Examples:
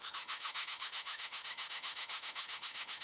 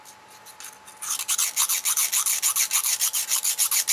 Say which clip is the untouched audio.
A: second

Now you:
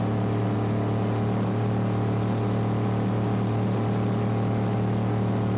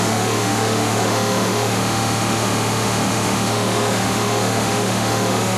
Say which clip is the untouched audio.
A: first